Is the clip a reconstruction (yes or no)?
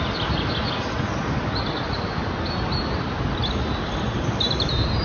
no